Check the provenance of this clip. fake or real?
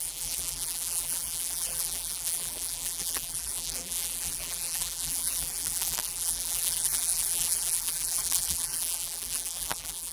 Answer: fake